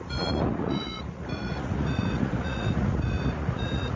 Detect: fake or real fake